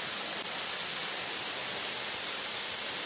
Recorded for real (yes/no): yes